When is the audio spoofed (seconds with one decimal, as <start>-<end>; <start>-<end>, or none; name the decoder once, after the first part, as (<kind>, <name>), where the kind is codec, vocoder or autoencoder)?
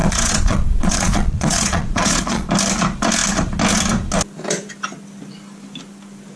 0.0-2.5 (vocoder, Vocos)